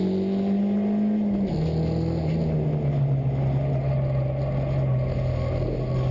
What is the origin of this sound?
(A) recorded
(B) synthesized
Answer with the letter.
A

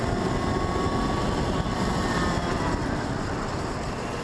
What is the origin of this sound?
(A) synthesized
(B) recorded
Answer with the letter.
B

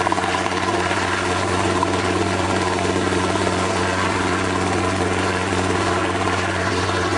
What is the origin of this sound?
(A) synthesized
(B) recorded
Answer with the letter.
A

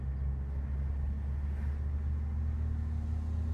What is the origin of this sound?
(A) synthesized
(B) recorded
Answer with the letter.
B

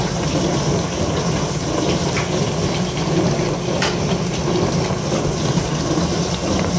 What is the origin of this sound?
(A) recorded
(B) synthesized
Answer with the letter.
A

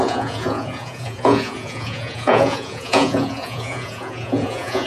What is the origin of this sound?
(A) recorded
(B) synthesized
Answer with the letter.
B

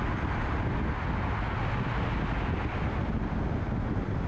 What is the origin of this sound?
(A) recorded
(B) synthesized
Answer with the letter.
A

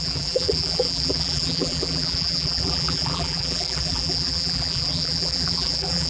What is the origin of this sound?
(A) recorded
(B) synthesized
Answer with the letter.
B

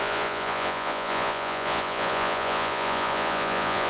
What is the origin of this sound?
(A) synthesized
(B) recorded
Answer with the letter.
A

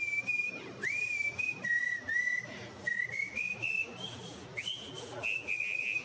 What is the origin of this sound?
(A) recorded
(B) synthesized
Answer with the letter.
A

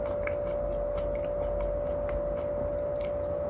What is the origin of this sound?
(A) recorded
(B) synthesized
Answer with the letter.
A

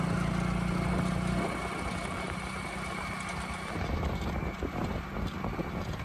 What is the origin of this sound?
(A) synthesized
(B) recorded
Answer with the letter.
B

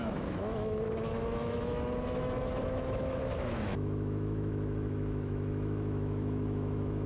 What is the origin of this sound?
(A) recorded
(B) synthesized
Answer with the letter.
B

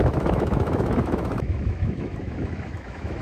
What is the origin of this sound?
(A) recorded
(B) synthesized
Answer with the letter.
B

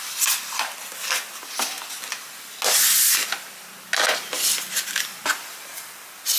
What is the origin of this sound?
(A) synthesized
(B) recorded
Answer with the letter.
B